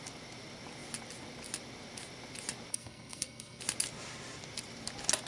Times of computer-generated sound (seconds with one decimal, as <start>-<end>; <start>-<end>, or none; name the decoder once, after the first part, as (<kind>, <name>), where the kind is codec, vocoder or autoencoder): 2.7-3.6 (codec, SNAC)